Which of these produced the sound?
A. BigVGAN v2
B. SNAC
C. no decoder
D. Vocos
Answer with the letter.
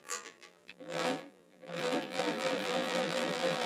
A